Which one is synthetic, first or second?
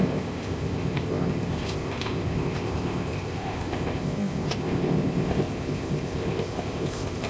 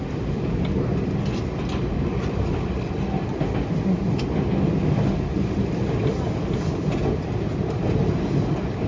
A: first